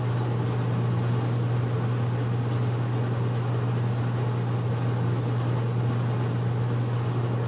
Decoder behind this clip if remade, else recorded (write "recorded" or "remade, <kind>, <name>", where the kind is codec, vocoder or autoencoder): recorded